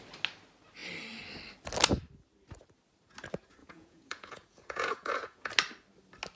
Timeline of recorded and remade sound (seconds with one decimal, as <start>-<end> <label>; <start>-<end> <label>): 0.0-3.6 recorded; 3.6-5.5 remade; 5.5-6.4 recorded